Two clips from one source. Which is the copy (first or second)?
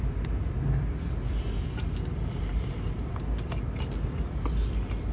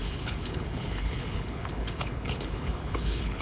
second